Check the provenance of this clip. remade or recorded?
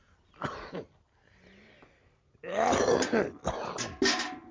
recorded